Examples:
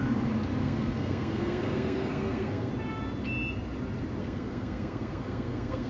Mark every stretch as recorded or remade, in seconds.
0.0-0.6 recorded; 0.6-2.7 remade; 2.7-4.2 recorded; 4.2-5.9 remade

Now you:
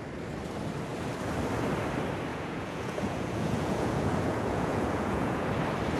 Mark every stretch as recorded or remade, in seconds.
0.0-2.3 recorded; 2.3-5.5 remade; 5.5-6.0 recorded